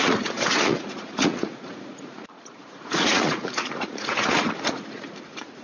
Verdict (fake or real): fake